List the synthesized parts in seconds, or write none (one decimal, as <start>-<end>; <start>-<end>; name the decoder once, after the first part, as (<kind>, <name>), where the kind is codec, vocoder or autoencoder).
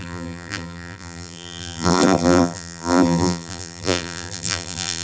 0.0-5.0 (vocoder, BigVGAN v2)